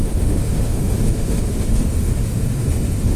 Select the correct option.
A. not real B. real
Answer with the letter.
A